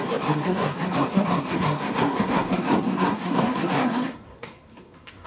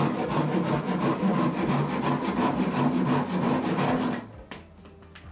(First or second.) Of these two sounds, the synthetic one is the first